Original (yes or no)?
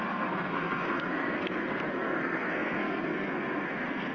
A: no